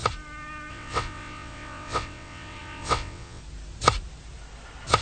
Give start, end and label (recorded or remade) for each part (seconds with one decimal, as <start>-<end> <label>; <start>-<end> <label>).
0.0-0.7 recorded; 0.7-3.4 remade; 3.4-5.0 recorded